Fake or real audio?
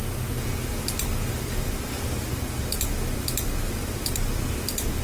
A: real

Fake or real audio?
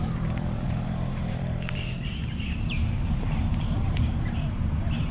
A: fake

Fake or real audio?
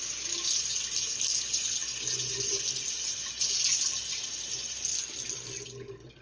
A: real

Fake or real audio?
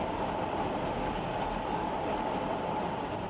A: fake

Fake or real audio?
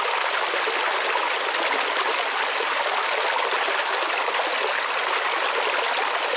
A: real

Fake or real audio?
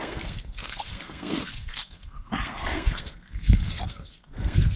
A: fake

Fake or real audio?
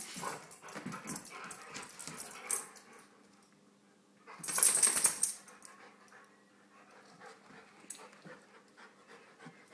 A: real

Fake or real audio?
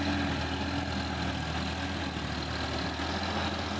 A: real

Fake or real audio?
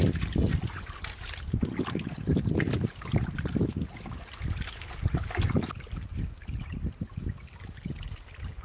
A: real